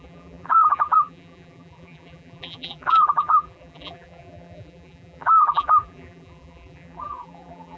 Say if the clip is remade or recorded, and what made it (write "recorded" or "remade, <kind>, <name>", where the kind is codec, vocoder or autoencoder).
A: remade, vocoder, BigVGAN v2